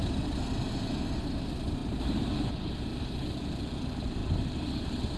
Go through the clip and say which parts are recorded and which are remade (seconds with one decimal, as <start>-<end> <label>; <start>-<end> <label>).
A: 0.0-1.8 recorded; 1.8-2.5 remade; 2.5-2.9 recorded; 2.9-3.8 remade; 3.8-5.2 recorded